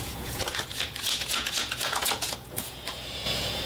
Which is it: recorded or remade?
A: remade